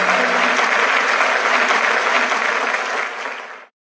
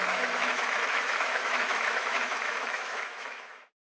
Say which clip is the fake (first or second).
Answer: second